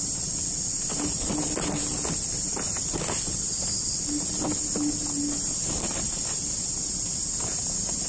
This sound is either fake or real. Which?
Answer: real